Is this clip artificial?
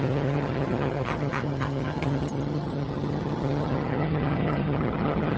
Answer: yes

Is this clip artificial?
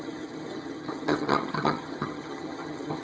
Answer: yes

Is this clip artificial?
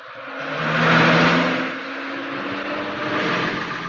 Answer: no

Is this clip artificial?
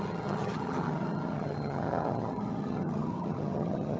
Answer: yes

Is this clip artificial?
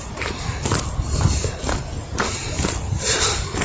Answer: no